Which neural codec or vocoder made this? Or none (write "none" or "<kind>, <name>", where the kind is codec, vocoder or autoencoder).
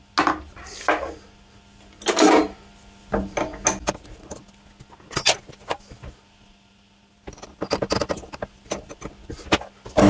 none